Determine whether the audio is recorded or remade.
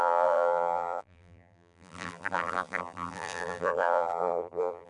remade